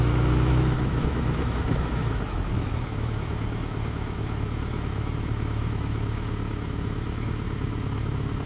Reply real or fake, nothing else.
fake